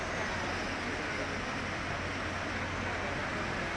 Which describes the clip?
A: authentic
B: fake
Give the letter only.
A